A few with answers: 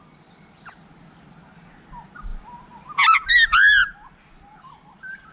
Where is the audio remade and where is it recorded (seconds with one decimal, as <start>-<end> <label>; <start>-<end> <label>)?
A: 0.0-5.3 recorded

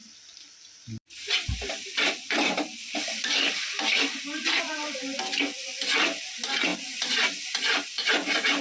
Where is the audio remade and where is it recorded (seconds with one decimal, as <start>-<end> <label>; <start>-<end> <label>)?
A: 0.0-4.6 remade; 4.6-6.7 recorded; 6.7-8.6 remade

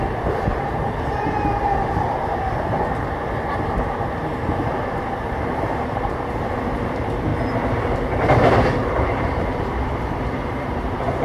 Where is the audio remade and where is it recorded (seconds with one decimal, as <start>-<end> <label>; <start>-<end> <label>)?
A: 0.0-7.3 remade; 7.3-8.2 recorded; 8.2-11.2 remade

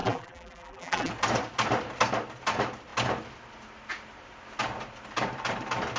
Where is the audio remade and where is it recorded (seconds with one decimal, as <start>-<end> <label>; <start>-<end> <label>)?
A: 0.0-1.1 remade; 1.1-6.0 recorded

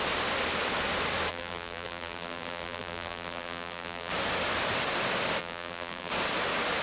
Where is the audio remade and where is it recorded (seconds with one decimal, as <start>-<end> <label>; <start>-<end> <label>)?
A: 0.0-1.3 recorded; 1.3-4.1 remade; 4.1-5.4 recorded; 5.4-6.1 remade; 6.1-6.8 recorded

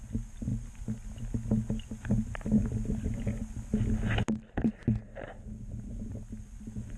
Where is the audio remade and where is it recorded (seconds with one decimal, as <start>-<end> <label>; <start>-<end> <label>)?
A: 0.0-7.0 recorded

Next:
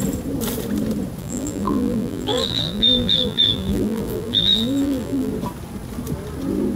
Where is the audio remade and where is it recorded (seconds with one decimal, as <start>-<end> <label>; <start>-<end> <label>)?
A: 0.0-1.2 recorded; 1.2-5.3 remade; 5.3-6.8 recorded